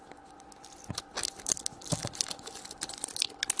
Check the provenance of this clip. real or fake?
real